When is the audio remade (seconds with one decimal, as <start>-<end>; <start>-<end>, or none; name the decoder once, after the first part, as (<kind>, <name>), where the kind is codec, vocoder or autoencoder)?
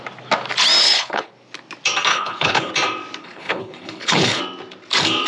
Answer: 0.8-1.3 (codec, HILCodec); 2.1-2.7; 3.2-4.4